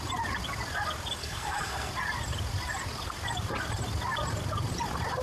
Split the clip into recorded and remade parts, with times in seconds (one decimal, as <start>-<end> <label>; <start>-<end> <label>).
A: 0.0-1.2 recorded; 1.2-1.9 remade; 1.9-5.2 recorded